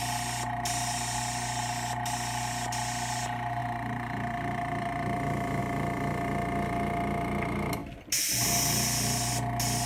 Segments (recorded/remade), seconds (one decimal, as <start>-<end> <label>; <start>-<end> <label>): 0.0-3.6 recorded; 3.6-5.6 remade; 5.6-9.9 recorded